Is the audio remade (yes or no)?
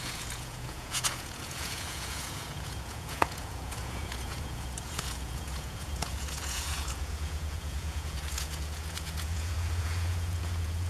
yes